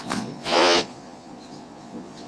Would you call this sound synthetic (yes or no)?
yes